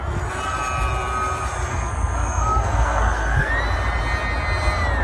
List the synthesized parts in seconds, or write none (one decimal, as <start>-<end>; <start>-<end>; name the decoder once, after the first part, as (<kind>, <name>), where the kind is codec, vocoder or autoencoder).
1.7-3.5 (codec, SNAC)